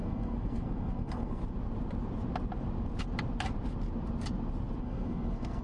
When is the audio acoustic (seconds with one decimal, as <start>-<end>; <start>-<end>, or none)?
1.4-4.8